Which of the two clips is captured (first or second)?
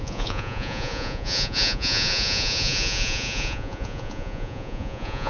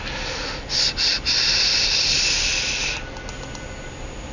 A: second